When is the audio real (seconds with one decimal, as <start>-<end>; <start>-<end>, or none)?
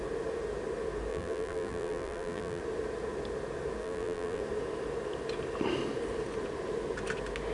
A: 0.0-1.1; 2.6-3.8; 4.4-7.5